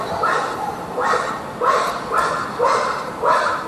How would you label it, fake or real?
real